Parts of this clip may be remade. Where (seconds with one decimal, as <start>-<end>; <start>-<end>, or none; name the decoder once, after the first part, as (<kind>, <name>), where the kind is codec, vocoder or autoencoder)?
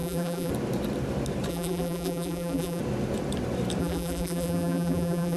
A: 0.0-0.5 (vocoder, BigVGAN v2); 1.5-2.8; 3.8-5.4